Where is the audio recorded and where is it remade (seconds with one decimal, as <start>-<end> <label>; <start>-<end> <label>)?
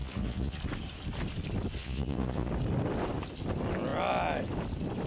0.0-0.6 remade; 0.6-1.8 recorded; 1.8-2.5 remade; 2.5-5.1 recorded